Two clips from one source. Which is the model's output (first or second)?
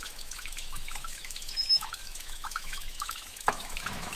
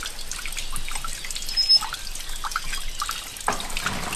first